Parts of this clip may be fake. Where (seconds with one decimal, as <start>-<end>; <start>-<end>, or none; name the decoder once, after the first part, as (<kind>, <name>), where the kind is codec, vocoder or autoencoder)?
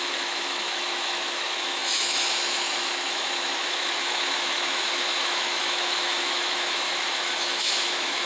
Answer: 0.0-8.3 (autoencoder, DAC-VAE)